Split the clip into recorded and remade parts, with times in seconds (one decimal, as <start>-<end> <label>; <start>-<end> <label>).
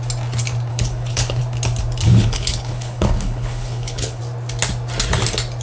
0.0-0.7 recorded; 0.7-1.4 remade; 1.4-2.1 recorded; 2.1-4.2 remade; 4.2-5.6 recorded